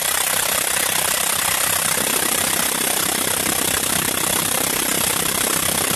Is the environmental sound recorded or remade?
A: recorded